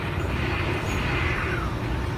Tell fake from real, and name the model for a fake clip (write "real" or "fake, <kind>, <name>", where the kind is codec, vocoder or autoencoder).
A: real